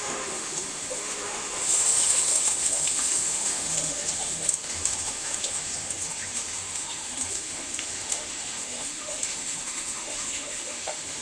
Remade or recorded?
remade